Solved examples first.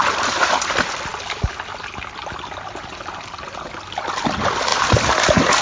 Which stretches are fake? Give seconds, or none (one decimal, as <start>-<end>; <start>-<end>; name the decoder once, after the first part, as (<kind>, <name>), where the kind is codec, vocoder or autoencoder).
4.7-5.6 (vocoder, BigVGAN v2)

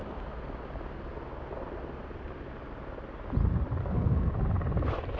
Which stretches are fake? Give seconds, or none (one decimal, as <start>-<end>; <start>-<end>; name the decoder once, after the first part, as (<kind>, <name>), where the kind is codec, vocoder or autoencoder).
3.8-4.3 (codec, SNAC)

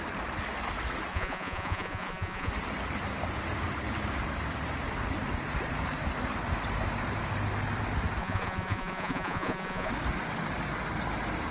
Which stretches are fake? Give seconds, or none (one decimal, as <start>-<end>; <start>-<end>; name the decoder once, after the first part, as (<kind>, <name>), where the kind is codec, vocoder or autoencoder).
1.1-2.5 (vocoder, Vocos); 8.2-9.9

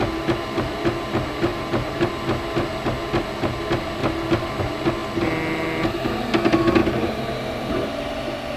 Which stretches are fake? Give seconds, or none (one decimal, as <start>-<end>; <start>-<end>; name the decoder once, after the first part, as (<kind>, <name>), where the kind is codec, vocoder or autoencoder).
1.5-2.1 (vocoder, BigVGAN v2); 4.0-4.6; 6.8-7.7

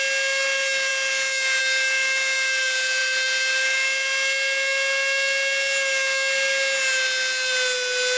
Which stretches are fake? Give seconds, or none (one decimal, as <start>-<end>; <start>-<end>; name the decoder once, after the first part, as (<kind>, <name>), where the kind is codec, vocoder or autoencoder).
none

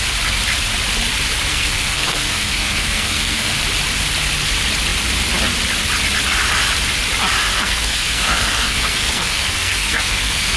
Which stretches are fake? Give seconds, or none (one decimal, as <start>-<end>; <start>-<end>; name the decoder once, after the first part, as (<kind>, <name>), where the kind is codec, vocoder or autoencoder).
1.5-3.6 (codec, SNAC); 7.5-10.6

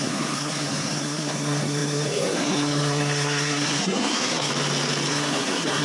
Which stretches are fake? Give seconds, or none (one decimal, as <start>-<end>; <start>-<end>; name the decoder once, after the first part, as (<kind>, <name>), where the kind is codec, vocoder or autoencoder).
0.0-4.5 (codec, SNAC); 5.1-5.8

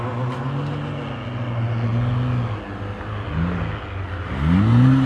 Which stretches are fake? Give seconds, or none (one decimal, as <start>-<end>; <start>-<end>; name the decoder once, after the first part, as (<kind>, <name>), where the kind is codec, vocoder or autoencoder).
none